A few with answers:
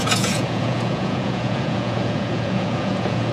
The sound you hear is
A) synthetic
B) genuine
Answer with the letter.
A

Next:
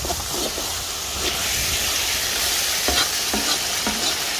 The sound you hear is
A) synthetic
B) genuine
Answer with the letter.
B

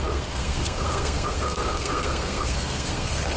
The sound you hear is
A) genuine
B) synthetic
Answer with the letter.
B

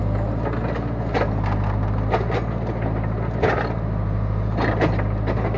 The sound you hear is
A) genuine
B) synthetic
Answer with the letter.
A